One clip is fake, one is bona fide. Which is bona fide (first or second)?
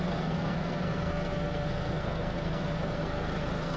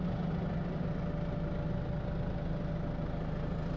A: second